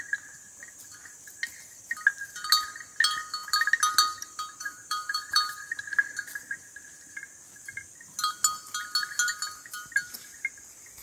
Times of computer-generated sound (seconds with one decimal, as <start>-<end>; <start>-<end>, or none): 4.6-5.6